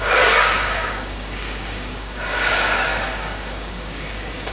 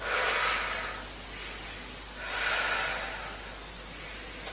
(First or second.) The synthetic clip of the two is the first